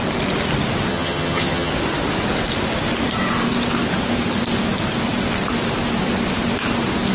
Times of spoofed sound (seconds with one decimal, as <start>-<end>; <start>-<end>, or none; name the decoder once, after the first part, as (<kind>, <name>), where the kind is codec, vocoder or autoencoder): 0.9-1.7 (vocoder, HiFi-GAN)